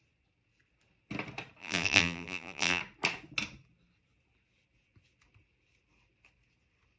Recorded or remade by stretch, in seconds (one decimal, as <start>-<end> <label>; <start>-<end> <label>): 0.0-1.6 recorded; 1.6-2.8 remade; 2.8-7.0 recorded